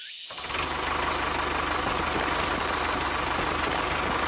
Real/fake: real